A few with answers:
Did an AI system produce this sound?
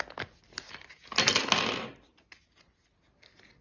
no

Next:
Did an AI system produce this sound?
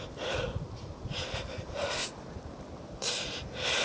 no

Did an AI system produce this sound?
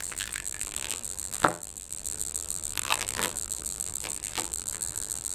yes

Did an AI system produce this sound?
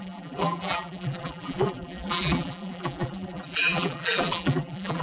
yes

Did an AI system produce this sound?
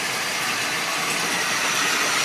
no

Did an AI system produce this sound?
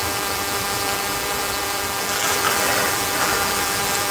yes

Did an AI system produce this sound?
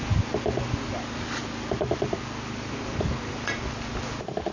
no